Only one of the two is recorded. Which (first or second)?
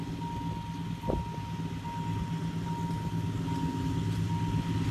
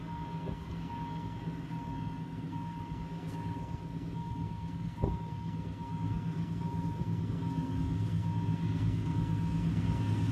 first